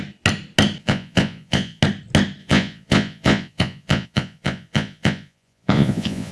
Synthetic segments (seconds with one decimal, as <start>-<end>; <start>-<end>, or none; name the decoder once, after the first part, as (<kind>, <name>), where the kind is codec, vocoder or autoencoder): 0.8-1.8 (vocoder, Vocos); 2.4-6.3